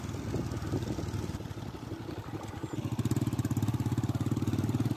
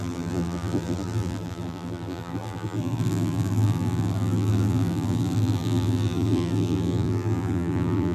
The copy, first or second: second